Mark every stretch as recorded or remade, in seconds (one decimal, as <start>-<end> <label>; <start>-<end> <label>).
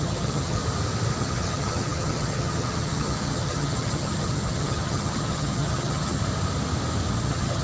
0.0-0.6 remade; 0.6-1.2 recorded; 1.2-6.2 remade; 6.2-7.1 recorded; 7.1-7.6 remade